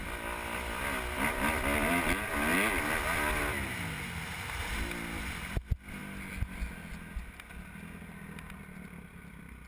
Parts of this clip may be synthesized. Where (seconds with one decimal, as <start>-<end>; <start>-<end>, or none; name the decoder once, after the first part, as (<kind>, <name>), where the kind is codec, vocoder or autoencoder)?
none